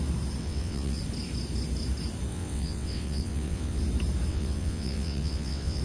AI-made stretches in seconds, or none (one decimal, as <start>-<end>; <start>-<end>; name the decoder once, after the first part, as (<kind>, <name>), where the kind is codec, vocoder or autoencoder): 0.4-1.0 (vocoder, WaveNeXt); 2.3-3.8; 4.3-5.8